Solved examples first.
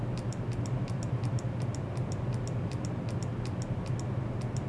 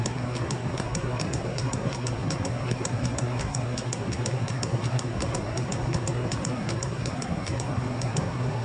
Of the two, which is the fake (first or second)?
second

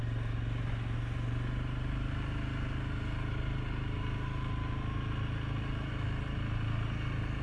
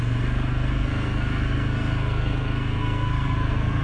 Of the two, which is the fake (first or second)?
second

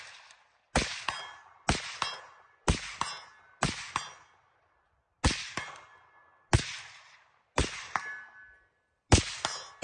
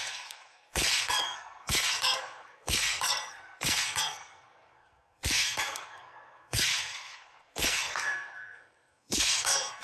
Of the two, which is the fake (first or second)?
second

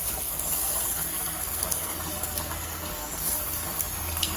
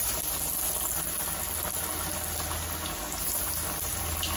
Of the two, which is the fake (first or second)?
first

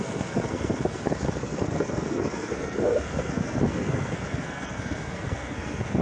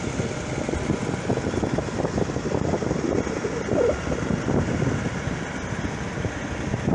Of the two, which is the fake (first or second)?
first